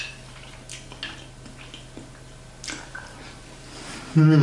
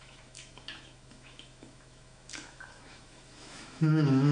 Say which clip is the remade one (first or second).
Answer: second